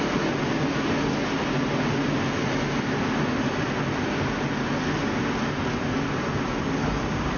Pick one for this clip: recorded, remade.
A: recorded